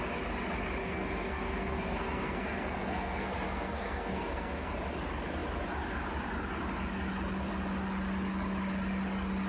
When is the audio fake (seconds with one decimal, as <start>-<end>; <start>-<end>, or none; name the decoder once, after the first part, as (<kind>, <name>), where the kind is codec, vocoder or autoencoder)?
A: 0.8-4.7 (codec, SNAC)